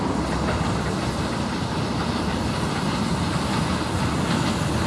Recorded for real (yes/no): yes